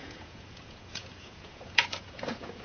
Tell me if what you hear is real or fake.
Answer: fake